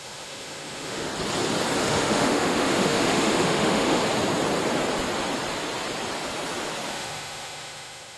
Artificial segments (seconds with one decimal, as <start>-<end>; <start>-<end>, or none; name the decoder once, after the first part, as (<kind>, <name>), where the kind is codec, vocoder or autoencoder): 0.0-1.1 (autoencoder, DAC-VAE); 1.8-4.0; 6.9-8.2